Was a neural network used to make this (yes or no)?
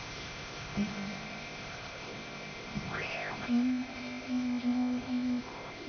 yes